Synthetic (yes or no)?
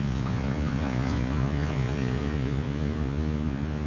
yes